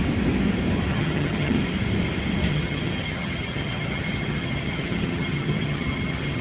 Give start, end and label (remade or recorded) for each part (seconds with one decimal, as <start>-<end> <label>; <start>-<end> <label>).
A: 0.0-0.9 recorded; 0.9-1.6 remade; 1.6-2.5 recorded; 2.5-6.4 remade